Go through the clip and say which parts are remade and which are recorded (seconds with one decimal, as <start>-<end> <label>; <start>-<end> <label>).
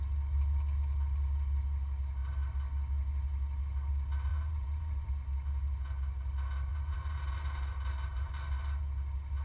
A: 0.0-4.3 recorded; 4.3-5.1 remade; 5.1-6.7 recorded; 6.7-8.8 remade; 8.8-9.4 recorded